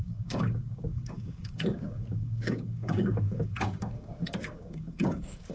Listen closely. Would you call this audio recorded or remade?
remade